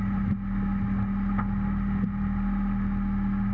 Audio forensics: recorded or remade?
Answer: recorded